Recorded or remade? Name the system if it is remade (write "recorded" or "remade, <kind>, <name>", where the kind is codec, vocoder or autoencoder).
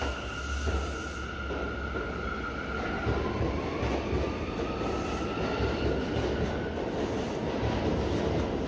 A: recorded